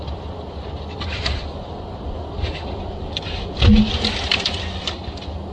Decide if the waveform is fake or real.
real